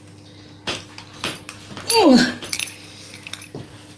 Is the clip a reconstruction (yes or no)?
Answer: no